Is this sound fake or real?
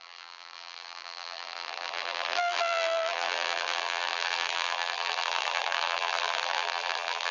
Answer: fake